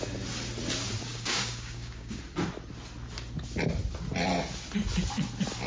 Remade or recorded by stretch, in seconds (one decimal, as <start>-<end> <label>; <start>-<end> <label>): 0.0-1.1 recorded; 1.1-2.2 remade; 2.2-5.7 recorded